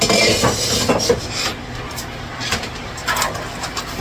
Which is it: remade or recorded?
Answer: recorded